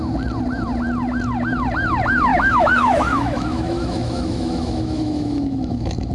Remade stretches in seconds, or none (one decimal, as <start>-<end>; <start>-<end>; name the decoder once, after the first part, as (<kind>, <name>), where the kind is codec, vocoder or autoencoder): 2.3-6.1 (autoencoder, DAC-VAE)